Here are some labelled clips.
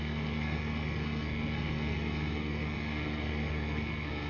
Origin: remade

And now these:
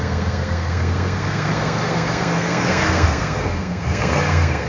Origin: remade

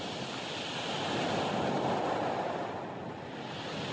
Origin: recorded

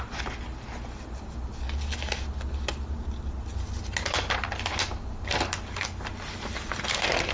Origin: recorded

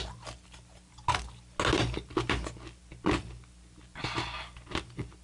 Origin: recorded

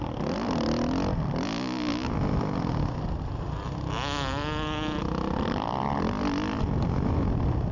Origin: recorded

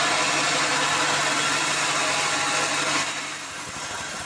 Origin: recorded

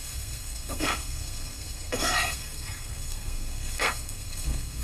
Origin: remade